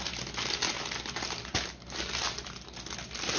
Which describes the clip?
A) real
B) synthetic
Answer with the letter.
A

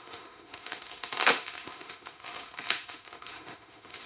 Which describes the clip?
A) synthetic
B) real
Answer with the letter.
A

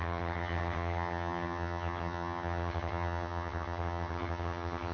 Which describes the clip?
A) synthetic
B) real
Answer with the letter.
A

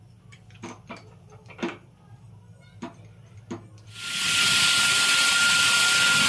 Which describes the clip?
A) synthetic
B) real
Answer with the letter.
B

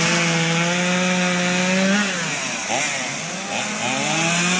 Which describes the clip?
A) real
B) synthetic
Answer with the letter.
A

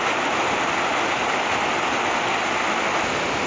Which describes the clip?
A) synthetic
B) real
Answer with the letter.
B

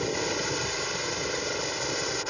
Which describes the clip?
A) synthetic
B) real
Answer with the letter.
B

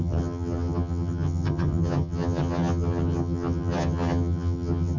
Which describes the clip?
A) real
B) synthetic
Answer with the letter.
B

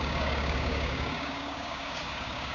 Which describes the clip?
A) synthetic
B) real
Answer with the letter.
A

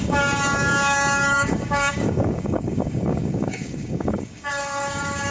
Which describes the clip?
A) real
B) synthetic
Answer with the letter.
B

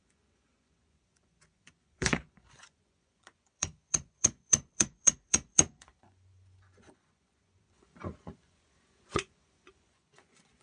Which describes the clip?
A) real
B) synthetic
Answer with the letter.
B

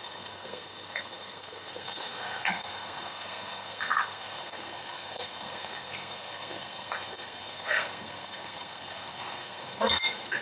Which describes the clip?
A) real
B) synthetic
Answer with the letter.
B